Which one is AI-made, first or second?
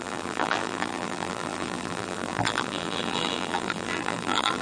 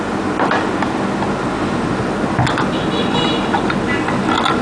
first